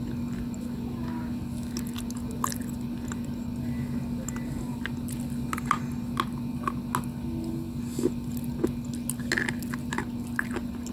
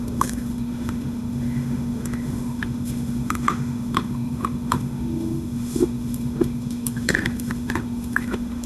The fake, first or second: second